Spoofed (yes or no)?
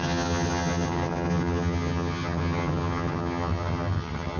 yes